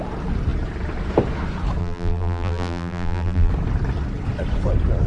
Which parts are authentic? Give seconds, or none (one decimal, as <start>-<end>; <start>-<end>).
0.0-1.8; 3.5-5.1